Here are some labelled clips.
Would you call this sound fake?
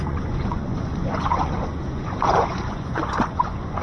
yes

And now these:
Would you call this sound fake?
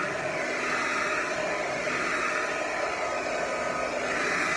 no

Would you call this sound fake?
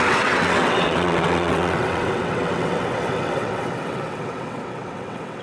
yes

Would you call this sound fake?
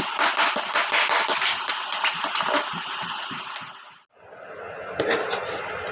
no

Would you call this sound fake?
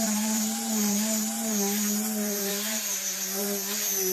yes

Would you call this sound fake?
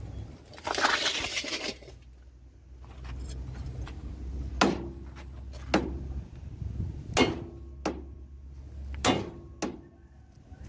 no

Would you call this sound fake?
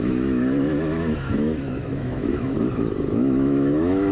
yes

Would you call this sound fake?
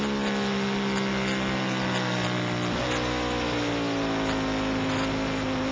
no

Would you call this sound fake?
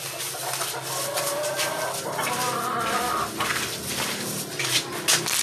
no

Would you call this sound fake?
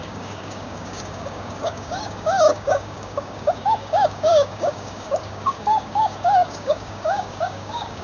yes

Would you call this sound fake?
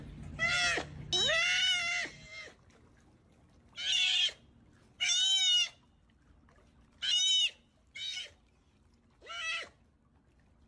no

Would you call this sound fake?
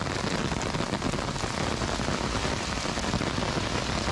no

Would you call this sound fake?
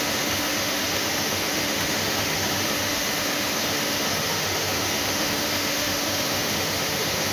yes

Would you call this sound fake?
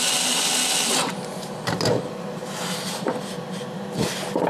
no